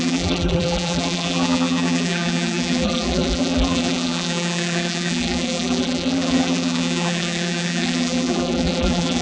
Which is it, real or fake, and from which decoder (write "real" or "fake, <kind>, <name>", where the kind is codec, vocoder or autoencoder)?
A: fake, vocoder, BigVGAN v2